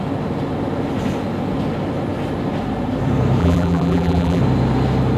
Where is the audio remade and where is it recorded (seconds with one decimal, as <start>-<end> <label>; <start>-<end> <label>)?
0.0-3.4 recorded; 3.4-4.4 remade; 4.4-5.2 recorded